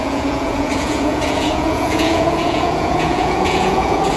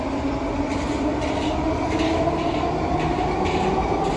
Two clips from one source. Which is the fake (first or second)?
first